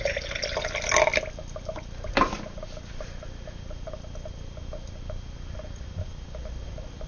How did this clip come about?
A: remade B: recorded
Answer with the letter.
B